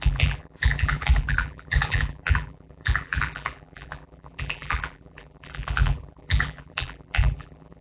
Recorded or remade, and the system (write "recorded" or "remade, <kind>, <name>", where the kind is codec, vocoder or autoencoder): remade, vocoder, BigVGAN v2